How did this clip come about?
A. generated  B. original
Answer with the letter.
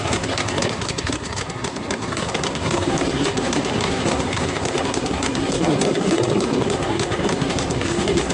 A